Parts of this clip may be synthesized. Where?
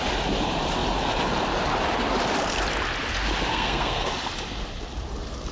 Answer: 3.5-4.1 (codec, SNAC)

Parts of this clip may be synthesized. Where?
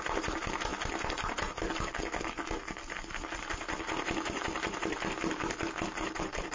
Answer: 0.0-0.7 (vocoder, BigVGAN v2); 3.4-6.5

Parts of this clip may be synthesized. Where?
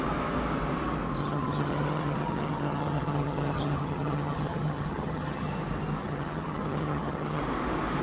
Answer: 1.2-5.5 (vocoder, HiFi-GAN); 6.0-7.4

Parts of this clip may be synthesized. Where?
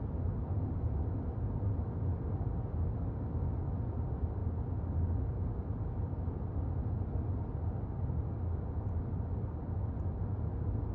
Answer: none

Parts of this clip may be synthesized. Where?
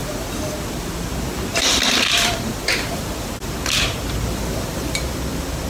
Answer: 1.5-4.9 (vocoder, BigVGAN v2)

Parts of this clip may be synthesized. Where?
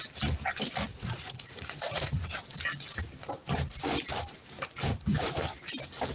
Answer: 0.9-2.4 (vocoder, Vocos)